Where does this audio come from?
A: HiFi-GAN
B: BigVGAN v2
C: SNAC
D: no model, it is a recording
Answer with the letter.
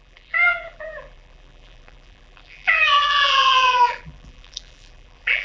B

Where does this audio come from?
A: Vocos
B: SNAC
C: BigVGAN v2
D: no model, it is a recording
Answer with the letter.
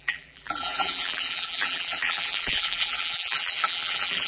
C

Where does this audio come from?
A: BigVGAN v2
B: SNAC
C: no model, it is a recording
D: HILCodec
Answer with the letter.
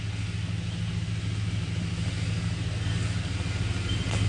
C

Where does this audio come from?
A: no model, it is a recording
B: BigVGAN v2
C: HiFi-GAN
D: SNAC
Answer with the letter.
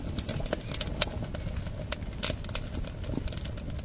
A